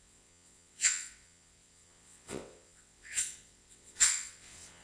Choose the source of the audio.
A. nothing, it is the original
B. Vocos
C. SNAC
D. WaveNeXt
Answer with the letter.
D